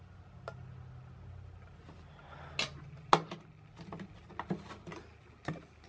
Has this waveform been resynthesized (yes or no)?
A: no